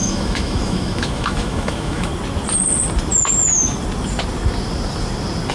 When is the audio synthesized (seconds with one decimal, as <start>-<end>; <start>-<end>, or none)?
0.0-2.1